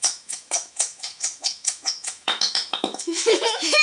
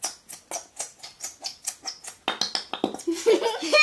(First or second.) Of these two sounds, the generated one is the first